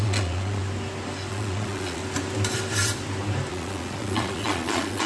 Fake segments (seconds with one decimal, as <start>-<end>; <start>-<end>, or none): 0.0-0.6; 1.3-2.0; 3.5-5.1